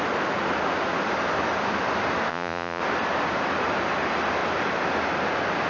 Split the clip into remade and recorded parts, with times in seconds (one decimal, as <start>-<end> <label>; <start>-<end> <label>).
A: 0.0-2.3 recorded; 2.3-2.8 remade; 2.8-5.7 recorded